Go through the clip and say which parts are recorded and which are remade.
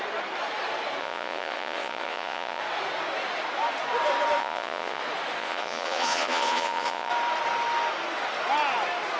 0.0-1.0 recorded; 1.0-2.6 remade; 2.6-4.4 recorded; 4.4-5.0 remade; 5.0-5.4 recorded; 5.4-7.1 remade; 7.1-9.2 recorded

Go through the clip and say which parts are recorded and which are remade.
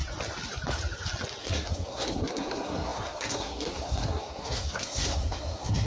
0.0-1.4 recorded; 1.4-5.9 remade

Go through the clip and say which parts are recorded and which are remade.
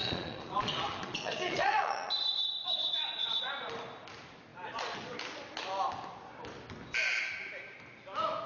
0.0-2.1 remade; 2.1-2.6 recorded; 2.6-3.5 remade; 3.5-8.5 recorded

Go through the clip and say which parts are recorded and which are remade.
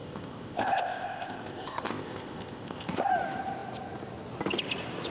0.0-3.1 remade; 3.1-5.1 recorded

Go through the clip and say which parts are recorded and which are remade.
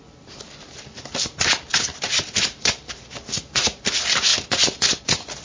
0.0-5.4 recorded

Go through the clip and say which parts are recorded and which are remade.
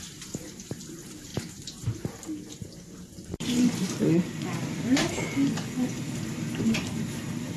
0.0-5.0 remade; 5.0-6.0 recorded; 6.0-7.6 remade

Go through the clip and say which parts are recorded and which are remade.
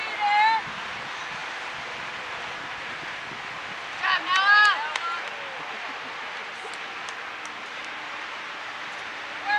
0.0-7.8 recorded; 7.8-9.2 remade; 9.2-9.6 recorded